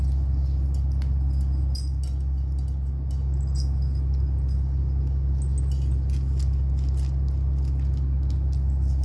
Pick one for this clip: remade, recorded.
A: recorded